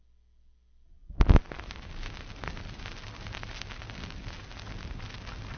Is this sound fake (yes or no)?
no